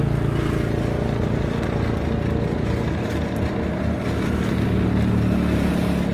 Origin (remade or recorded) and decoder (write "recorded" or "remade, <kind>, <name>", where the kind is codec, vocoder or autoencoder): recorded